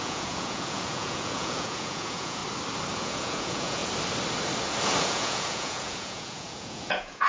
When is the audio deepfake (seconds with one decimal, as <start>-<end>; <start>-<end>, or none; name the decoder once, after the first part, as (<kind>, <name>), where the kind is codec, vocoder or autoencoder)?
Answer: 0.0-2.4 (vocoder, Vocos); 2.9-3.8; 5.0-7.3